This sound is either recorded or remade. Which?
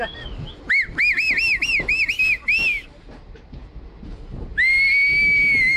recorded